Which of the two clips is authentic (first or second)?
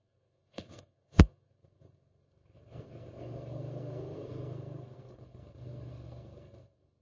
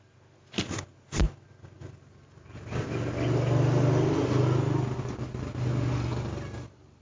second